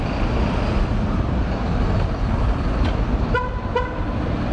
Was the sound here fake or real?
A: real